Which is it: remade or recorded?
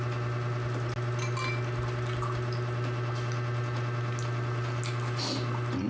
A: recorded